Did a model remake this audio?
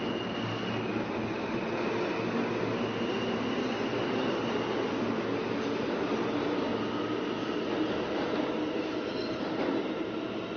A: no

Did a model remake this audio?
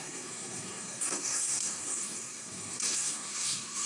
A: yes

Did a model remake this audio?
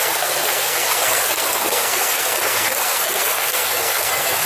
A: yes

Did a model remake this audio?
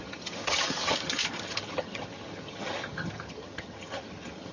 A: yes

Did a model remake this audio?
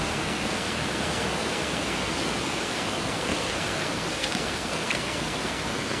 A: yes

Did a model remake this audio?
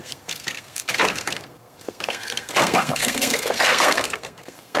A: yes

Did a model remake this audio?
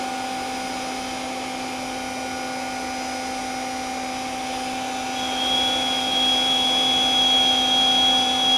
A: no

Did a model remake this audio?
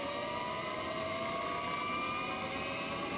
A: no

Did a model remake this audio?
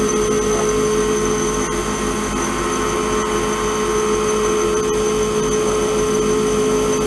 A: no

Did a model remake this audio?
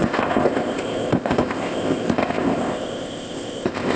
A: yes